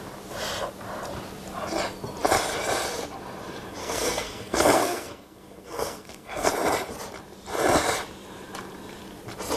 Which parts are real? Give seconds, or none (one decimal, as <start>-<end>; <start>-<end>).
0.0-3.8; 6.5-9.6